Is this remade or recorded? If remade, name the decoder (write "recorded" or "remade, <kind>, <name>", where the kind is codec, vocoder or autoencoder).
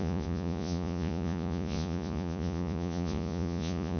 remade, vocoder, Vocos